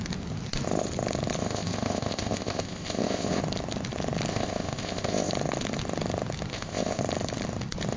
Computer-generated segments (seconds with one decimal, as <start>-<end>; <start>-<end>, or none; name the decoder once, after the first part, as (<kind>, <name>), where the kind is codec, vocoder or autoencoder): 1.4-3.4 (codec, ZipCodec); 4.3-5.3; 6.5-7.0

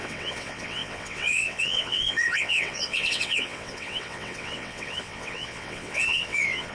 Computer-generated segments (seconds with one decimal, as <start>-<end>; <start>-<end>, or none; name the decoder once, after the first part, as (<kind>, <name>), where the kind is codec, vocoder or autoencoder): 0.0-6.7 (vocoder, WaveNeXt)